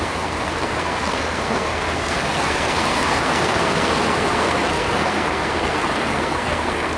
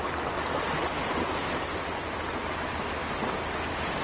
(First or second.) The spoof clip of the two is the first